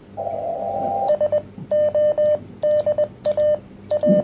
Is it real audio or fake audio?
real